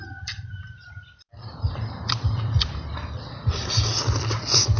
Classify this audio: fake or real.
fake